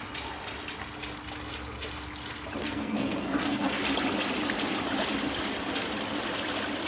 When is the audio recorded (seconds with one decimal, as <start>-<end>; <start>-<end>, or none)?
0.0-2.6; 3.8-6.9